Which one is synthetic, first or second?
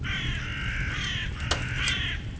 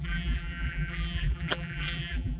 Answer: second